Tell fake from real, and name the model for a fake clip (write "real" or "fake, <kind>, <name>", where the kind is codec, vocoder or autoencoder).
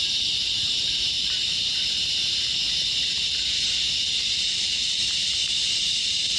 fake, vocoder, BigVGAN v2